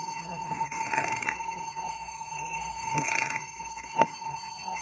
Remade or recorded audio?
remade